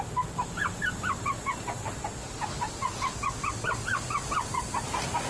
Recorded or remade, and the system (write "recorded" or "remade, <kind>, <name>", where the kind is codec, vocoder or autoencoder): recorded